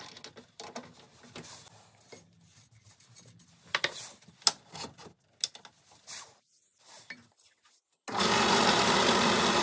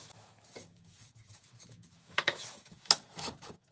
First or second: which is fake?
second